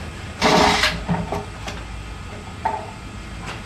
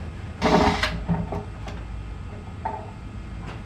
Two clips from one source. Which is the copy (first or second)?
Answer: first